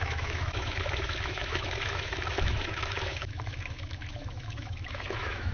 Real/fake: fake